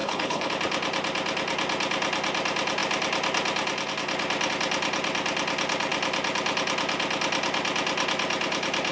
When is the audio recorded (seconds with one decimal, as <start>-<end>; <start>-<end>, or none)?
0.5-8.9